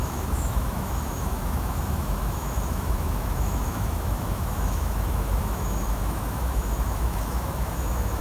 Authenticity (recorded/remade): remade